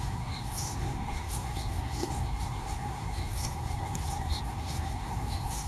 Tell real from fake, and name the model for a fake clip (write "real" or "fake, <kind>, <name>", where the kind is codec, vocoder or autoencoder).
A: fake, codec, SNAC